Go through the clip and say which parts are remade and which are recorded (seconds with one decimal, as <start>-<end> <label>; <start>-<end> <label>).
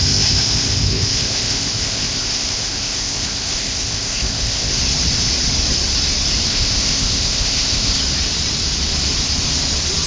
0.0-4.7 remade; 4.7-6.5 recorded; 6.5-8.0 remade; 8.0-10.1 recorded